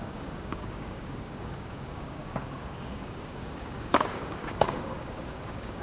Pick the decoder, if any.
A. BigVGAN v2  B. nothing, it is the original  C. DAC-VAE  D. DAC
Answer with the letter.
D